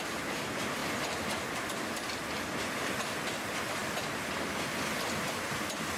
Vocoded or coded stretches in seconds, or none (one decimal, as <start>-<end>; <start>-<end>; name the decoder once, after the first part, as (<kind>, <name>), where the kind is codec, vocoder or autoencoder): none